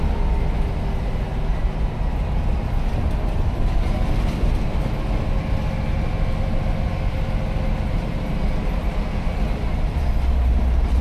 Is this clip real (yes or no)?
yes